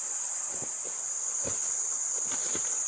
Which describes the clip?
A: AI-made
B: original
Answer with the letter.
B